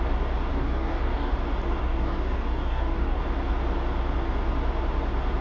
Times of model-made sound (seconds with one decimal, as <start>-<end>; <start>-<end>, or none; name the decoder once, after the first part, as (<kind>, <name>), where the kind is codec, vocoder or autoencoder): 0.5-1.3 (codec, DAC); 1.8-3.2